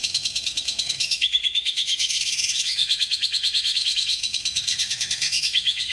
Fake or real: fake